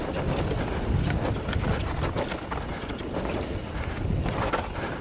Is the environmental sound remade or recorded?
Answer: recorded